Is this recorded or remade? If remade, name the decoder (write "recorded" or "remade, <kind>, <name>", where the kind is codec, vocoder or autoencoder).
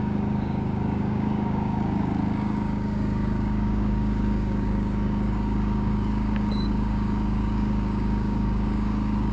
remade, codec, DAC